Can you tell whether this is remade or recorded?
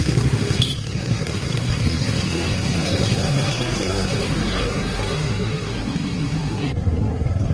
remade